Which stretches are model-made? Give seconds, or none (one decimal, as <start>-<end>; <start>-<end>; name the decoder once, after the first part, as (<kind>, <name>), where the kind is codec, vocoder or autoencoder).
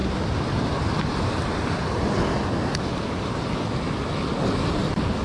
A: 0.0-0.9 (vocoder, BigVGAN v2)